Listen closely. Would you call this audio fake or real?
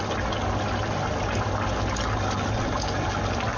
real